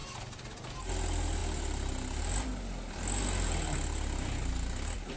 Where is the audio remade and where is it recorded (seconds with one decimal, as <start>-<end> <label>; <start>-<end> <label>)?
0.0-5.2 recorded